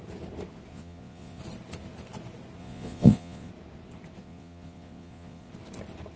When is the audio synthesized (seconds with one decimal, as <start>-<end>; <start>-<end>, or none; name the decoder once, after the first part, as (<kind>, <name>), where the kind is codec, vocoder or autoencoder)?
0.7-1.4 (vocoder, Vocos); 2.6-3.5; 4.2-5.5